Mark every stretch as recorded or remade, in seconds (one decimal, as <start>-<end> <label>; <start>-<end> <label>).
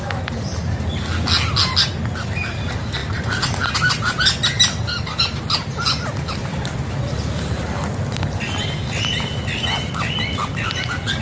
0.0-11.2 recorded